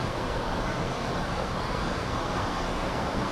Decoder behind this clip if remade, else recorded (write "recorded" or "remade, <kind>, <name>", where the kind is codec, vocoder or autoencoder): remade, codec, SNAC